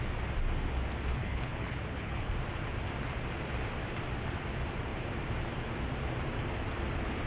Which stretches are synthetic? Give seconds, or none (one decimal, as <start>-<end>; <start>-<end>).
1.1-2.3